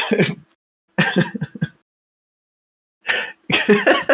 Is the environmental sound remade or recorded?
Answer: recorded